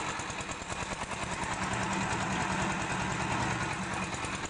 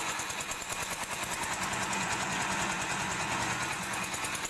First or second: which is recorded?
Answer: first